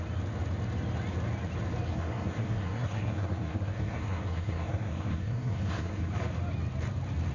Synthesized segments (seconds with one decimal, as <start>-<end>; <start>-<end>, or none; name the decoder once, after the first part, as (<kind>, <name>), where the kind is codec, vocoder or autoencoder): 1.9-6.1 (codec, SNAC)